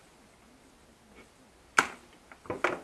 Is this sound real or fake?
real